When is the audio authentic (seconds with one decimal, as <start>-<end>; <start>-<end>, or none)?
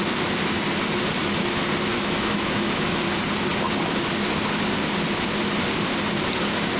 0.0-1.9; 3.0-6.8